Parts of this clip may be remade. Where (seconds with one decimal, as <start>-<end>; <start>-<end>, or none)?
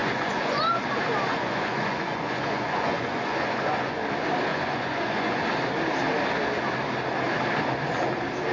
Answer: 0.0-0.6; 1.3-4.0; 4.5-5.4